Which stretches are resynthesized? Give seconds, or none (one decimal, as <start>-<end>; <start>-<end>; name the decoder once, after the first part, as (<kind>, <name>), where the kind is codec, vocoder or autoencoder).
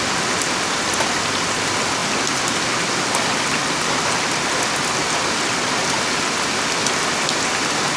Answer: none